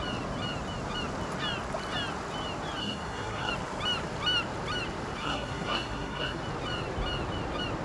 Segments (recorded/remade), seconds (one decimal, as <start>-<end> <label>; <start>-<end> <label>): 0.0-2.8 recorded; 2.8-3.5 remade; 3.5-5.2 recorded; 5.2-6.4 remade; 6.4-7.8 recorded